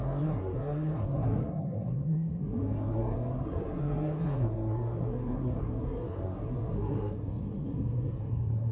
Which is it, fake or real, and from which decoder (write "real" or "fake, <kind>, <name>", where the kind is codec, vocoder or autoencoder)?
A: fake, codec, SNAC